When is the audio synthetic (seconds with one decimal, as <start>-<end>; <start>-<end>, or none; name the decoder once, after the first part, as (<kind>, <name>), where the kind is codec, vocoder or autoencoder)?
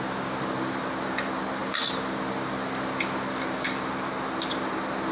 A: none